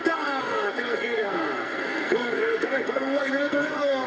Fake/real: fake